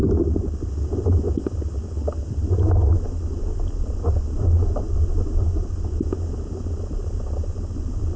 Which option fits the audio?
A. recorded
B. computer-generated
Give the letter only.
A